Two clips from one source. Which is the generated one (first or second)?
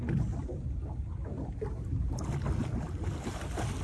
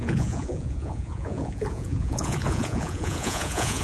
second